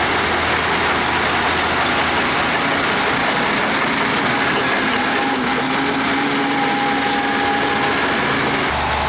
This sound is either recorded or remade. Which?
recorded